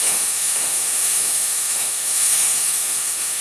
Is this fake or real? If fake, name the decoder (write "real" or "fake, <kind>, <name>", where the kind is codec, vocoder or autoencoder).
fake, autoencoder, DAC-VAE